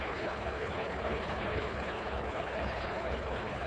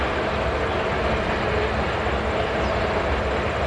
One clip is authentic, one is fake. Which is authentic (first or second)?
second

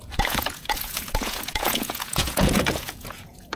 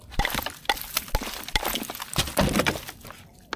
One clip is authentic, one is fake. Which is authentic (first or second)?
second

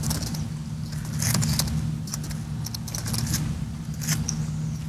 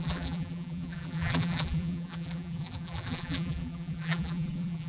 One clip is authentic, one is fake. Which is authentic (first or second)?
first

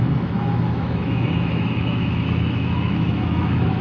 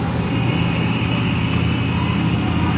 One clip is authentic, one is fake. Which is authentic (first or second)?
second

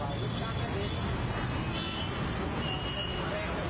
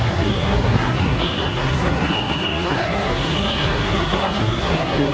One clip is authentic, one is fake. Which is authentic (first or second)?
first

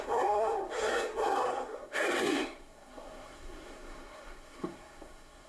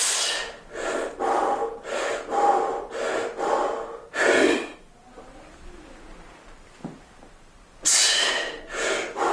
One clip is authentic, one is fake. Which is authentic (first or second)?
second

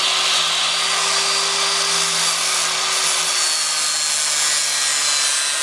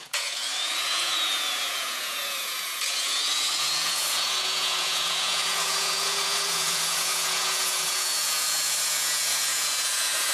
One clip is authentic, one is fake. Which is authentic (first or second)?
first